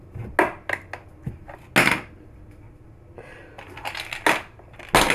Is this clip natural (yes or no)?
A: yes